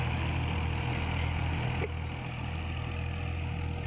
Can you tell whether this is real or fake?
real